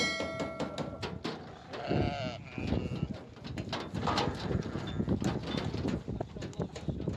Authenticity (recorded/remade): recorded